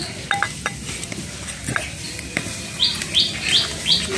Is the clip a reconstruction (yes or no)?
no